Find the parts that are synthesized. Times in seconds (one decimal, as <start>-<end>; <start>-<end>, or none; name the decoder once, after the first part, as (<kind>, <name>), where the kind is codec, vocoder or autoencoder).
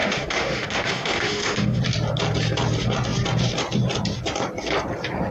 0.0-1.8 (autoencoder, DAC-VAE)